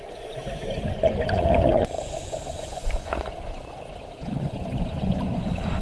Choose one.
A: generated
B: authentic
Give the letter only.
A